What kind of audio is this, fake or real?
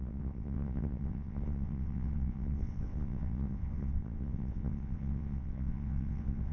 fake